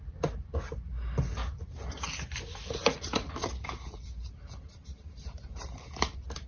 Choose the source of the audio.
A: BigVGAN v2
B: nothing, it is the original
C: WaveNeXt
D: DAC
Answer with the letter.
B